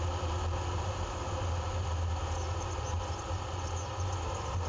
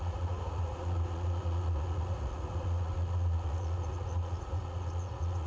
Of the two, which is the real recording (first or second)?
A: first